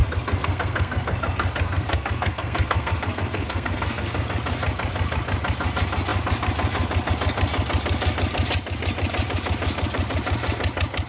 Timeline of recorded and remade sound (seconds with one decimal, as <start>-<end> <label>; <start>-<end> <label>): 0.0-4.2 remade; 4.2-11.1 recorded